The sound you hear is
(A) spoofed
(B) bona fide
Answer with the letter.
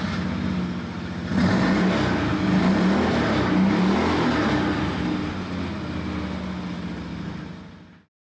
B